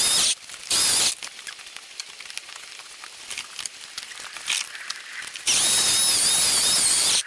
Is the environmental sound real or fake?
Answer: real